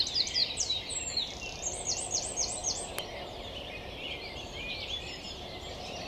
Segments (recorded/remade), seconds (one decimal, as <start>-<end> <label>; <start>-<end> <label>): 0.0-6.1 remade